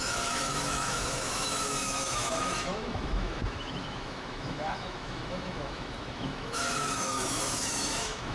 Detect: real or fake fake